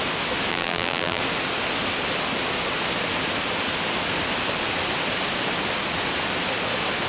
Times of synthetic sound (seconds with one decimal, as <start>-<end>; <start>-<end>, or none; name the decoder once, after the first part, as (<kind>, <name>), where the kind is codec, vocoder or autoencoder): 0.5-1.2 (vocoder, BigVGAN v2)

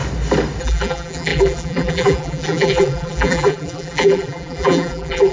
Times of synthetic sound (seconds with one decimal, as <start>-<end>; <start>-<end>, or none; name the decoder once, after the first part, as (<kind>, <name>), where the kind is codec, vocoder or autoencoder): 0.6-5.3 (vocoder, BigVGAN v2)

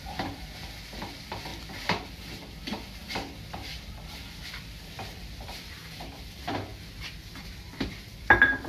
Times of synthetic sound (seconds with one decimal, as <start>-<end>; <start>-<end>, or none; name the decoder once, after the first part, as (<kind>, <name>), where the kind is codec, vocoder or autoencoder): 0.0-6.7 (vocoder, BigVGAN v2); 7.3-8.7

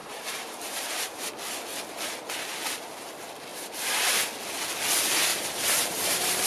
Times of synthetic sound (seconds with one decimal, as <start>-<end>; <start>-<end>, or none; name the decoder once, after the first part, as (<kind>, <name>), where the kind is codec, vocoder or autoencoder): 0.0-1.3 (vocoder, BigVGAN v2); 3.5-4.2; 5.3-6.5

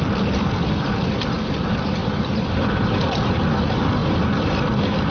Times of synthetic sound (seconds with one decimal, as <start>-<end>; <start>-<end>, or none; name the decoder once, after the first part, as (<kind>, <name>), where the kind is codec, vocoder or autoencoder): 2.0-3.2 (vocoder, BigVGAN v2)

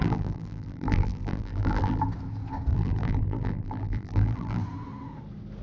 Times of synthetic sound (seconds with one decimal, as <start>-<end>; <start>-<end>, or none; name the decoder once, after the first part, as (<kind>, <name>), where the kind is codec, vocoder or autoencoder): 0.0-2.0 (vocoder, BigVGAN v2); 2.7-4.6

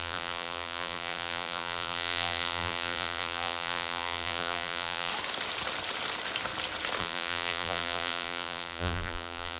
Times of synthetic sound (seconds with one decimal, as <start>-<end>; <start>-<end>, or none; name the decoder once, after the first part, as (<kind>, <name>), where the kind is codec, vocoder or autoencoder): 0.0-5.1 (vocoder, BigVGAN v2); 7.0-9.6